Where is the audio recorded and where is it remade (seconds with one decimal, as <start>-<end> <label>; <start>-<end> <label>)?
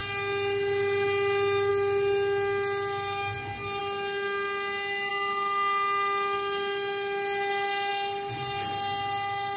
0.0-9.6 recorded